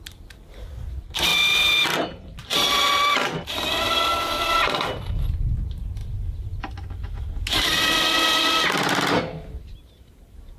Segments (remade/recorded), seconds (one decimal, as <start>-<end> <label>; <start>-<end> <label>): 0.0-10.6 recorded